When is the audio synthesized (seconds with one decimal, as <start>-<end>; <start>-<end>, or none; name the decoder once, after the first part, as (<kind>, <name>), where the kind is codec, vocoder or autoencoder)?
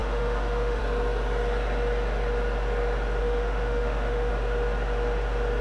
0.0-0.8 (autoencoder, DAC-VAE); 3.2-4.3